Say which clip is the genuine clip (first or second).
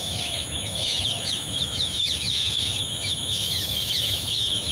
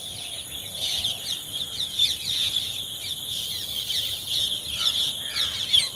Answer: second